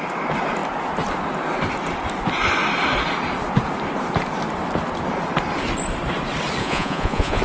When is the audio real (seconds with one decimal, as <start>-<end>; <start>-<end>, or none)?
0.0-6.6